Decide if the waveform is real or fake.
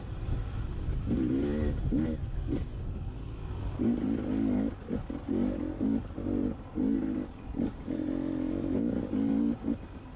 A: real